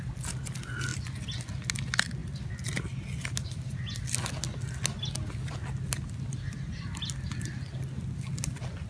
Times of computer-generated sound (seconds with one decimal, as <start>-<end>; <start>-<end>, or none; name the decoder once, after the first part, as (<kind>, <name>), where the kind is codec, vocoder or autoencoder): none